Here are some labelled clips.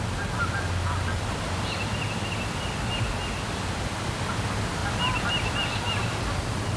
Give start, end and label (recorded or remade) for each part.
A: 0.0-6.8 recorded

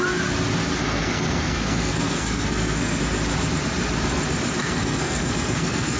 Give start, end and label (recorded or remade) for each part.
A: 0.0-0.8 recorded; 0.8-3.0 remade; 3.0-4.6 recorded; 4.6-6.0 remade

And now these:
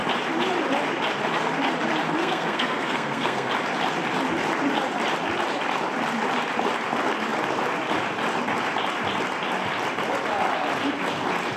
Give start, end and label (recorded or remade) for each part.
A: 0.0-2.2 recorded; 2.2-3.5 remade; 3.5-11.6 recorded

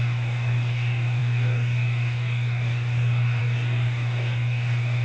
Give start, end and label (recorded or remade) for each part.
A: 0.0-5.0 remade

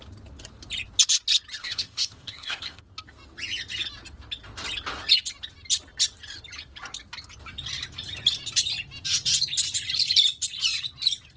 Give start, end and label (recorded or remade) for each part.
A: 0.0-1.6 recorded; 1.6-2.8 remade; 2.8-11.4 recorded

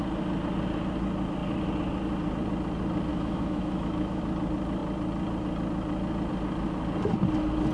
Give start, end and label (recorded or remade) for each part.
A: 0.0-3.1 recorded; 3.1-4.2 remade; 4.2-7.7 recorded

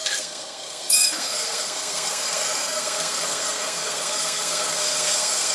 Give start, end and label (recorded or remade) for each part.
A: 0.0-5.5 remade

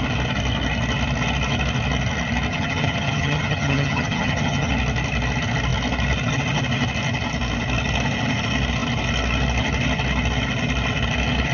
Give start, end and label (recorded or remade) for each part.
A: 0.0-2.5 recorded; 2.5-4.7 remade; 4.7-11.5 recorded